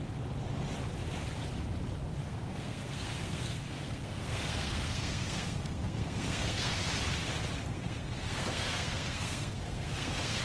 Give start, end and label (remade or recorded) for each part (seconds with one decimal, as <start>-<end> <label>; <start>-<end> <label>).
0.0-2.2 recorded; 2.2-6.7 remade; 6.7-7.7 recorded; 7.7-10.4 remade